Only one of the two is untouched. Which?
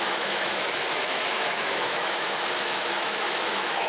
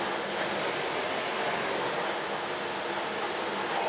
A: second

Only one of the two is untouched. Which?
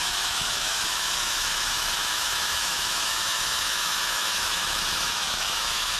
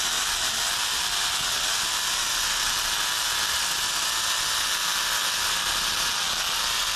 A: second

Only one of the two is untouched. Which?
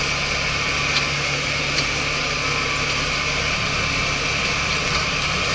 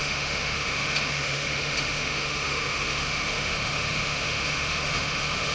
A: first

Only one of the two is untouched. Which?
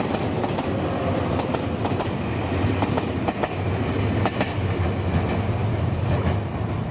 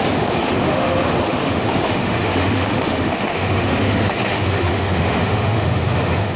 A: first